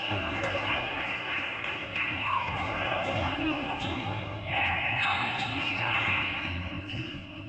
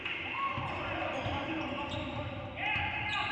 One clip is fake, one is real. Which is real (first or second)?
second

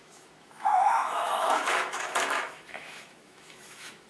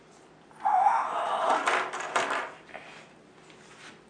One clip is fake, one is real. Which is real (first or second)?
second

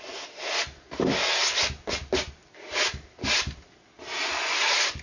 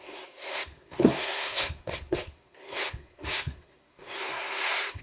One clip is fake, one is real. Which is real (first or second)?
first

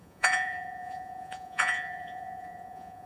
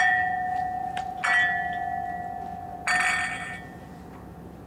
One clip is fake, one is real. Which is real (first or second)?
second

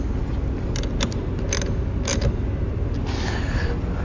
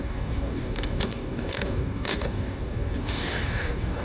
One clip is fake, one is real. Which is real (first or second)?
first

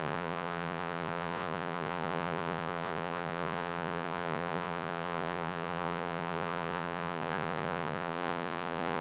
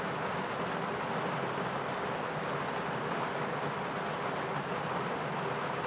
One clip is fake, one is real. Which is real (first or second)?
second